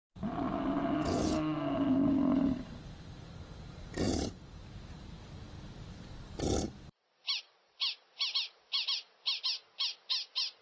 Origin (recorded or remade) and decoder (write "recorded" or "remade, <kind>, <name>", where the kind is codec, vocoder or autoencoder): recorded